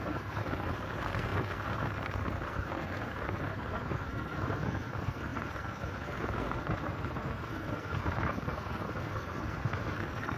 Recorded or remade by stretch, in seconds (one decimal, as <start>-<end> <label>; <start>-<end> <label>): 0.0-10.4 remade